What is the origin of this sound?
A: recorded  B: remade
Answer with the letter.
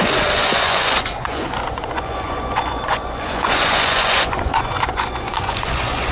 B